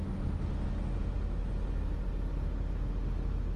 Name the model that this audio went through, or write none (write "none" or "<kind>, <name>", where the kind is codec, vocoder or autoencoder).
none